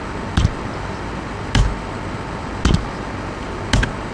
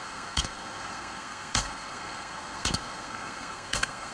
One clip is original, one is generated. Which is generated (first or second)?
second